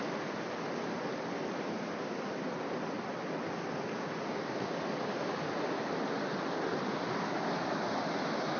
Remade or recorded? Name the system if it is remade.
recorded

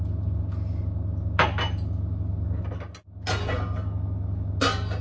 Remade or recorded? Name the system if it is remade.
recorded